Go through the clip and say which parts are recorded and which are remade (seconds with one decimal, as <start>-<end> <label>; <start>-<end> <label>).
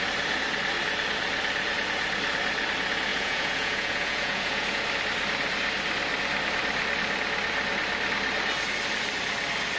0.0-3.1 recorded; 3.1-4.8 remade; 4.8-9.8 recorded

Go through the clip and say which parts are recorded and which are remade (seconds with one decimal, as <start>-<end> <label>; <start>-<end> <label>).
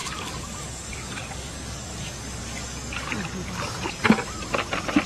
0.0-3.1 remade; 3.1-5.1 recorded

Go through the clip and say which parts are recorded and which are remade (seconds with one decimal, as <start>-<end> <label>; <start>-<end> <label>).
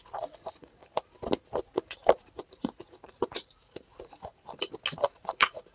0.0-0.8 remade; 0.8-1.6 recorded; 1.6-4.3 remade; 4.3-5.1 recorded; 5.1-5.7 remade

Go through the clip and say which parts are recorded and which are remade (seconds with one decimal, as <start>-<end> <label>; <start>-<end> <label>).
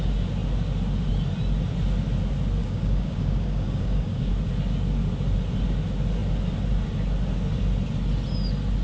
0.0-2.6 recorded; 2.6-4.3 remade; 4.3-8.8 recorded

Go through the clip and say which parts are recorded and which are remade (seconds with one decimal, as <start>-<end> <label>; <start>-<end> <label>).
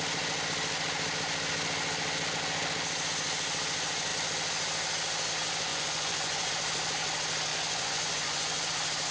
0.0-5.7 recorded; 5.7-6.5 remade; 6.5-7.5 recorded; 7.5-8.7 remade; 8.7-9.1 recorded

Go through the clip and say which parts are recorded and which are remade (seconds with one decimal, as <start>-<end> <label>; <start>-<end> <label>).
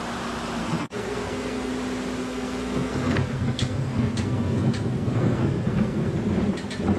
0.0-0.6 recorded; 0.6-1.7 remade; 1.7-2.2 recorded; 2.2-6.1 remade; 6.1-7.0 recorded